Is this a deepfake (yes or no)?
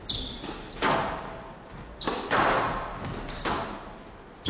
no